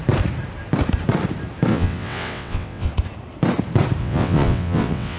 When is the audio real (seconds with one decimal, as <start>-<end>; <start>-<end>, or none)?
0.0-1.7; 2.9-4.0